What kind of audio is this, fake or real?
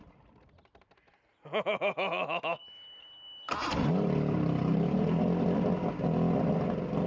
real